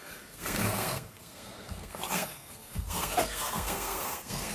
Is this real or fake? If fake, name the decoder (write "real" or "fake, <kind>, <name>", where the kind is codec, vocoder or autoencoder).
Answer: fake, codec, SNAC